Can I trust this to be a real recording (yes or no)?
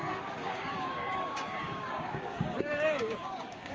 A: no